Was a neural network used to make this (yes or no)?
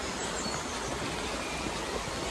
no